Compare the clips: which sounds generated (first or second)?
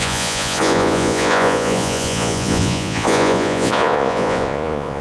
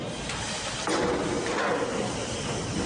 first